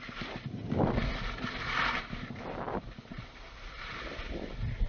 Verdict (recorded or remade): recorded